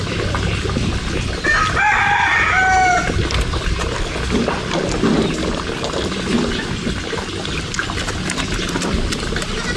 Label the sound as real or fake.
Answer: real